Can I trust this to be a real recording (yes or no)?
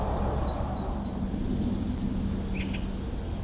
yes